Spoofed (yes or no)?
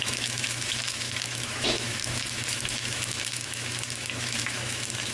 yes